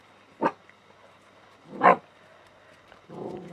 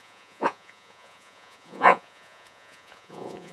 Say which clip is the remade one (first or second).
second